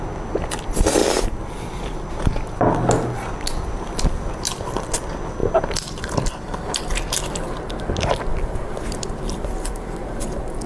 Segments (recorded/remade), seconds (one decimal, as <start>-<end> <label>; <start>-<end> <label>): 0.0-1.0 recorded; 1.0-2.1 remade; 2.1-5.4 recorded; 5.4-6.8 remade; 6.8-8.3 recorded; 8.3-10.7 remade